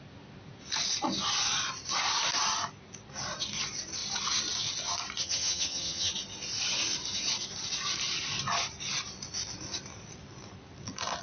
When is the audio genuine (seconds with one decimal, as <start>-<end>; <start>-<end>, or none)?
0.0-5.2; 6.1-11.2